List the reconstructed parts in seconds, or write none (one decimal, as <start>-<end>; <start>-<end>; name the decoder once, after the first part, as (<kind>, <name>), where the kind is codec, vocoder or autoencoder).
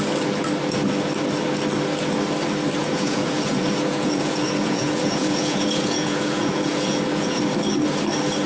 2.8-7.4 (vocoder, Vocos)